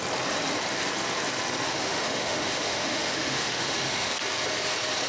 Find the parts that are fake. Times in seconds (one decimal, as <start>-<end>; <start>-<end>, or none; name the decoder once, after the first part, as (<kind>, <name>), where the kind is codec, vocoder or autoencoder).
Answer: 1.7-4.1 (autoencoder, DAC-VAE)